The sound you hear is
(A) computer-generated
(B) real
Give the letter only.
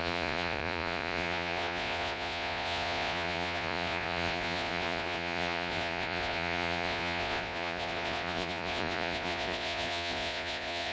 A